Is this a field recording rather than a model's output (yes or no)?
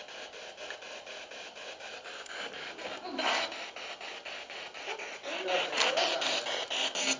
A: yes